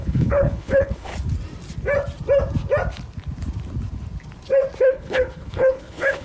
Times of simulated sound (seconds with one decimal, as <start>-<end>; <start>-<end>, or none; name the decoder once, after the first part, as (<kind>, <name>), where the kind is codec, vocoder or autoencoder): 0.0-1.1 (codec, HILCodec); 4.8-6.2